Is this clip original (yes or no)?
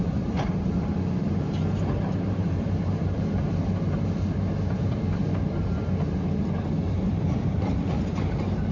no